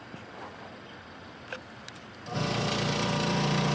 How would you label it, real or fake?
real